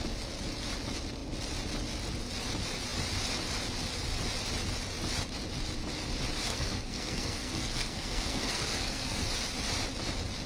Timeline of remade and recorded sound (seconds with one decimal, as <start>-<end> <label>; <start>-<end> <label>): 0.0-6.5 recorded; 6.5-9.2 remade; 9.2-10.5 recorded